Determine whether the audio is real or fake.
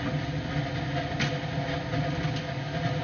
real